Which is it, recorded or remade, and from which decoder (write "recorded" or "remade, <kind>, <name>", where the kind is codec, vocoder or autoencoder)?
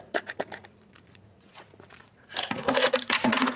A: remade, vocoder, Vocos